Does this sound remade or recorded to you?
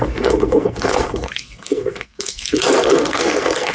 remade